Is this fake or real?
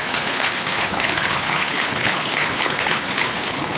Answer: fake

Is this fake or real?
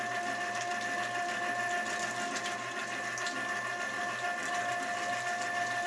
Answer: real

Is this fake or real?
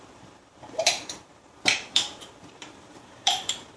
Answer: fake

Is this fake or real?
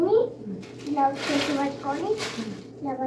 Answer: real